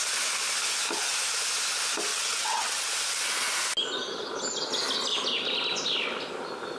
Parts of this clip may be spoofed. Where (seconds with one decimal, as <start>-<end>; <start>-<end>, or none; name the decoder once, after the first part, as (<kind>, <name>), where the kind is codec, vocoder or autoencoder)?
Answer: 2.1-2.9 (vocoder, WaveNeXt)